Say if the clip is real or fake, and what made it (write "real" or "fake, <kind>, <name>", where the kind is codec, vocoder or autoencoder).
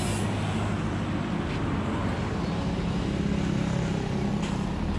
real